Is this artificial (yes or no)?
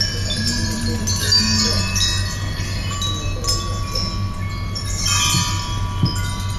no